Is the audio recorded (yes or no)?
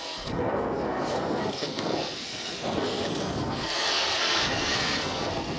no